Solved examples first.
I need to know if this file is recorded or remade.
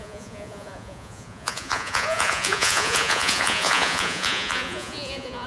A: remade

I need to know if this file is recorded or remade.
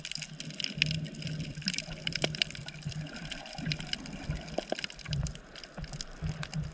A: recorded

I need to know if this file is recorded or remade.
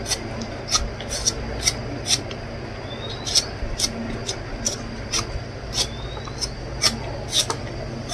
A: recorded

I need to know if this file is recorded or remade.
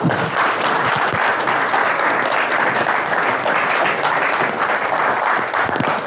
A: recorded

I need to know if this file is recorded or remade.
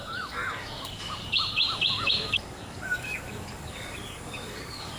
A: remade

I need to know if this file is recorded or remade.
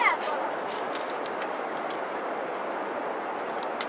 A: recorded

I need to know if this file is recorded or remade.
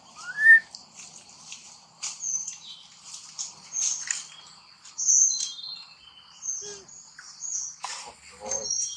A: recorded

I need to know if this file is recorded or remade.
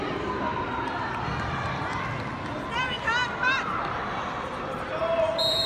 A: recorded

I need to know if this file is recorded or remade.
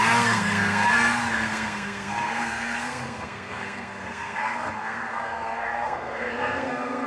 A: remade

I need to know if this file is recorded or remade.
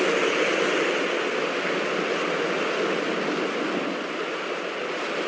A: recorded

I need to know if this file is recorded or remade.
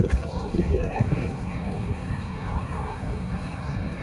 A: remade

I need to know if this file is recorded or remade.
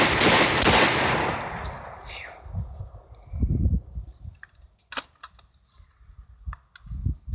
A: recorded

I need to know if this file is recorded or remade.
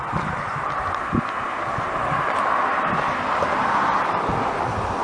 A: recorded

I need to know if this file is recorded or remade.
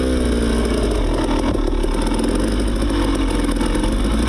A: recorded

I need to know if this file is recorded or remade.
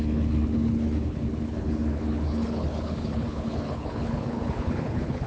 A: remade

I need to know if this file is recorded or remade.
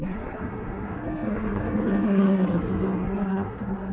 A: remade